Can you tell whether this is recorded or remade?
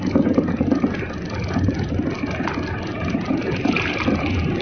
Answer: recorded